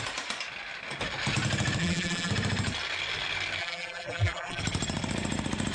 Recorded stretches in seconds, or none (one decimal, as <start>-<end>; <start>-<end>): 0.0-1.8; 2.3-3.6; 4.6-5.7